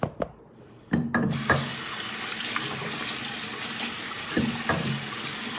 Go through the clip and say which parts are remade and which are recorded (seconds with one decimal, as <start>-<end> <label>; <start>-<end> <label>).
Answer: 0.0-5.6 recorded

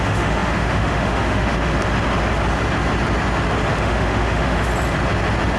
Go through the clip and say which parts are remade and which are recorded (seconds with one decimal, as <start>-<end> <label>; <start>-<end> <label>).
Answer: 0.0-1.7 remade; 1.7-3.8 recorded; 3.8-4.7 remade; 4.7-5.6 recorded

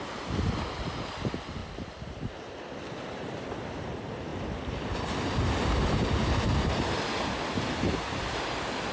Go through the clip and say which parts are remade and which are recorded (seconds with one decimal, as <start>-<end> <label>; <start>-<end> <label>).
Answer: 0.0-8.9 recorded

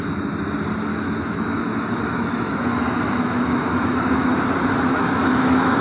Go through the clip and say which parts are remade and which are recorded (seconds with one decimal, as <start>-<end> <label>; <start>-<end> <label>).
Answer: 0.0-0.9 recorded; 0.9-4.4 remade; 4.4-4.9 recorded; 4.9-5.8 remade

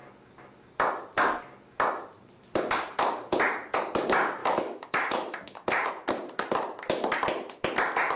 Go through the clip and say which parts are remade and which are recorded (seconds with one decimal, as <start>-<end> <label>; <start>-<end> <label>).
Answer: 0.0-4.4 recorded; 4.4-5.9 remade; 5.9-8.2 recorded

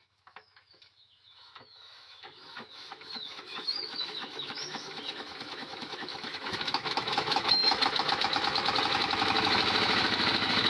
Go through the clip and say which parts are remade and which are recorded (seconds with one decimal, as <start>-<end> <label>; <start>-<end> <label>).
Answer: 0.0-10.7 remade

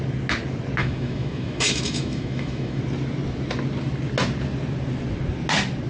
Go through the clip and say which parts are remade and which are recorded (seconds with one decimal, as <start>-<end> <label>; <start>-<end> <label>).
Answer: 0.0-0.8 recorded; 0.8-2.8 remade; 2.8-5.9 recorded